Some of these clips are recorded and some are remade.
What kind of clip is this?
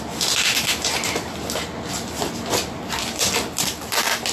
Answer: recorded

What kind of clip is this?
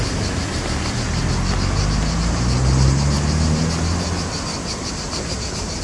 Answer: recorded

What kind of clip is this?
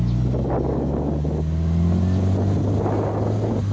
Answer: recorded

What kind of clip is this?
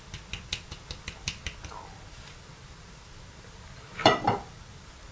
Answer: recorded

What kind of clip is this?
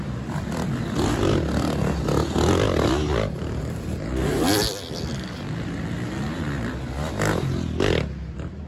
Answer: recorded